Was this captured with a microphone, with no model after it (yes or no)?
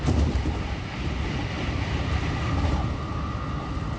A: yes